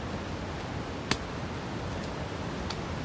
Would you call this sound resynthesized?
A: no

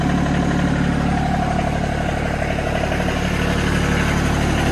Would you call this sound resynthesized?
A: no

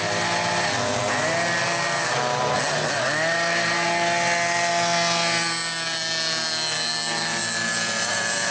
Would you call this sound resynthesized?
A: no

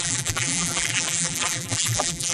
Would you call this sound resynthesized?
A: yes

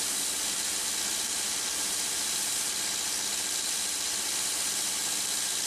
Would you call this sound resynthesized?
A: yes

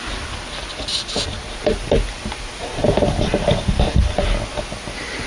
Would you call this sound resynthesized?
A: no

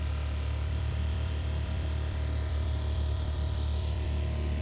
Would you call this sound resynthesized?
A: yes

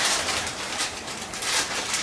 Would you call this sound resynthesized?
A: yes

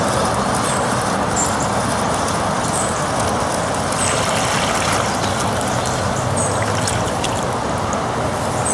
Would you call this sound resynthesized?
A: no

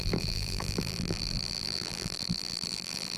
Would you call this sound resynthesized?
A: yes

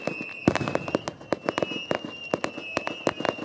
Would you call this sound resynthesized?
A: no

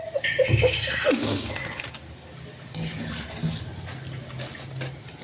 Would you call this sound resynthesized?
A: no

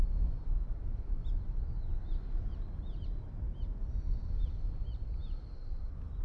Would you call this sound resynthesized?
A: no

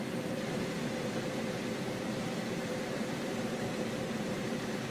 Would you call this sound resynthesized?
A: yes